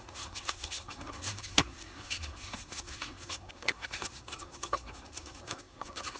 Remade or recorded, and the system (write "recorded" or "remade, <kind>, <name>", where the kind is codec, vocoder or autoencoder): remade, codec, SNAC